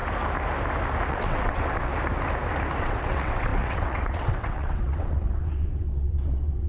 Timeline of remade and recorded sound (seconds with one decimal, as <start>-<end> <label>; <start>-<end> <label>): 0.0-1.1 recorded; 1.1-1.9 remade; 1.9-2.8 recorded; 2.8-6.7 remade